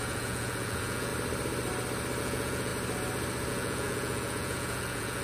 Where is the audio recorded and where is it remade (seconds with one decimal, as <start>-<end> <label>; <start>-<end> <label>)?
0.0-1.1 remade; 1.1-2.2 recorded; 2.2-2.7 remade; 2.7-3.5 recorded; 3.5-5.2 remade